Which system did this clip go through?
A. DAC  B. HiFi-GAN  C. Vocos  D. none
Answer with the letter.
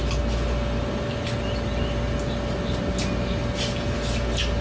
D